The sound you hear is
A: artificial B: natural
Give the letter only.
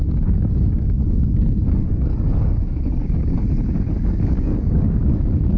A